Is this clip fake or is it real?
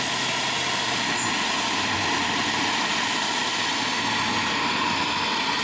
fake